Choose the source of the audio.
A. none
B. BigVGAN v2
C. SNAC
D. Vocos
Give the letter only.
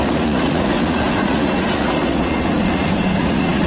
D